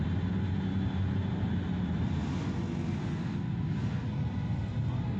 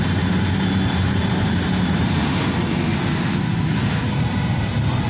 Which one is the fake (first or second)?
second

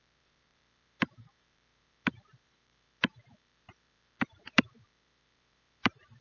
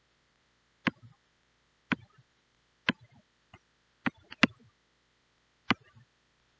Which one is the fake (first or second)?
first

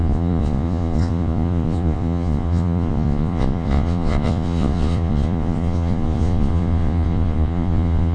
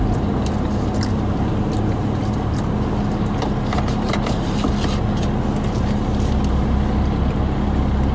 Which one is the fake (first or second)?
first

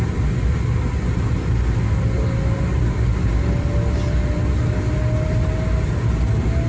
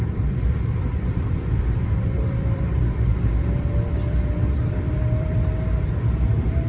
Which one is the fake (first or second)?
second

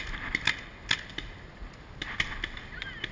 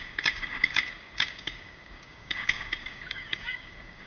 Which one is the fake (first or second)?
second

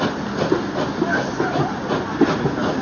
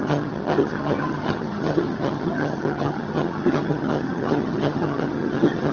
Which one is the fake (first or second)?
second